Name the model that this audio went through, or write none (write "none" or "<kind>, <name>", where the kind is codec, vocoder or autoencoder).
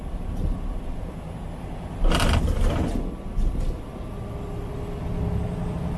none